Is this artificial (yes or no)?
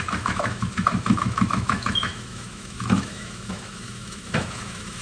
yes